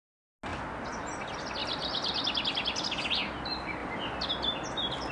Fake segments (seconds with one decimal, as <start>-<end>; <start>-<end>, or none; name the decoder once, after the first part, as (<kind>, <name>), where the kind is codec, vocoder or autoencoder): 1.6-2.2 (vocoder, BigVGAN v2)